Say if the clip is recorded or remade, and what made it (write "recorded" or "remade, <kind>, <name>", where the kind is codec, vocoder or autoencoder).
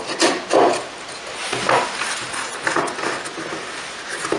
recorded